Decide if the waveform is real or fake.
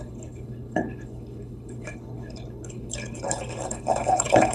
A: fake